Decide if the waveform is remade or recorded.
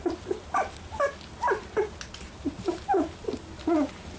recorded